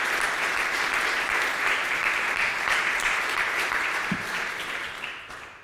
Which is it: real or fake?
fake